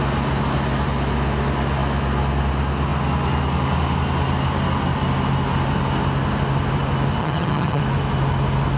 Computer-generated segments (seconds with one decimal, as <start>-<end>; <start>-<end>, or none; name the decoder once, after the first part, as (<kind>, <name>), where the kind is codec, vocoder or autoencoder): 7.2-7.8 (vocoder, HiFi-GAN)